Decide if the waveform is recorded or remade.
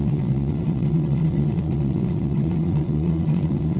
remade